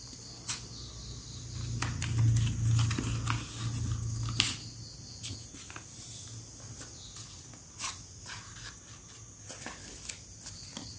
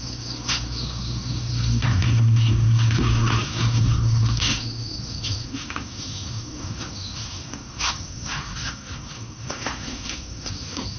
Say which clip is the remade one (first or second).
second